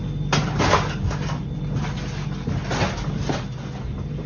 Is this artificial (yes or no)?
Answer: no